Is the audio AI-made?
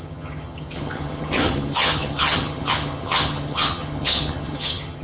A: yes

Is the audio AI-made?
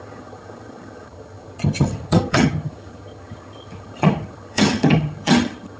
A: yes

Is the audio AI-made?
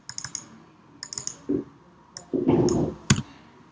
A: no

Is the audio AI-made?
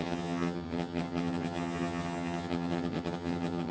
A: yes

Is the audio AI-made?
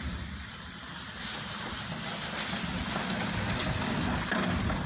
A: no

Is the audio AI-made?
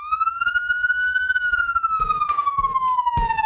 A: no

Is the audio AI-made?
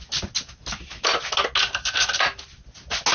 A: no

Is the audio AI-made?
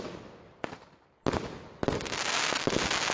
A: no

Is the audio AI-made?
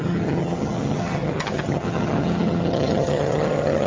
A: yes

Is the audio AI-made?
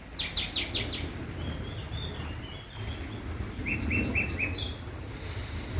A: no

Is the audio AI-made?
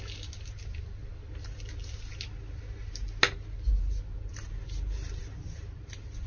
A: no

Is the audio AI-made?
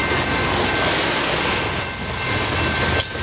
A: no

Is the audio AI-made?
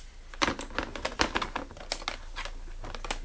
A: no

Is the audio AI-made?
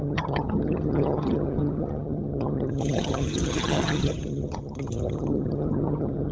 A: yes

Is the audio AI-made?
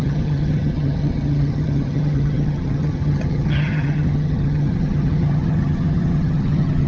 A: yes